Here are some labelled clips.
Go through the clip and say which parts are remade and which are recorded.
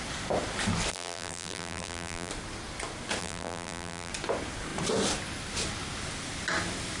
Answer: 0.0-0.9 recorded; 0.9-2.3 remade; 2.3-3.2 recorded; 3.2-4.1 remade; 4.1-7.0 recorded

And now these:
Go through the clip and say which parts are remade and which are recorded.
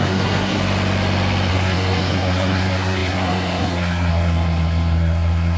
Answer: 0.0-0.6 remade; 0.6-1.5 recorded; 1.5-5.6 remade